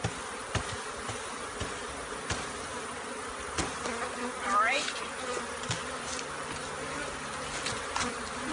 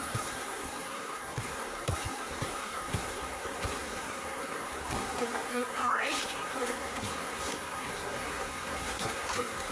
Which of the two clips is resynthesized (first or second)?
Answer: second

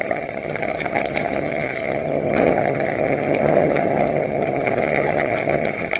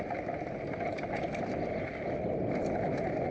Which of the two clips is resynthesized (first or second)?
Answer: first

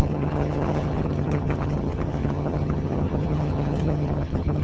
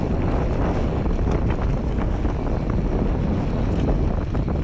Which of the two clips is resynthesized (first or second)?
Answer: first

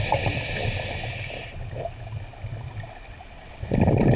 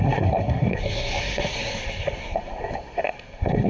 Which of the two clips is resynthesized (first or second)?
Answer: second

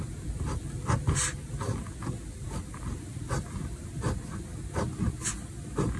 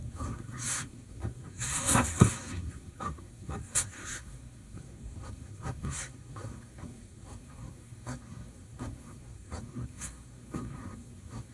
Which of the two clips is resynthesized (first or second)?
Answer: second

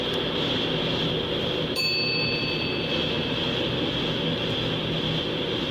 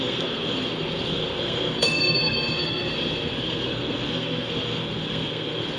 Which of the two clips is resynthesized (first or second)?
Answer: second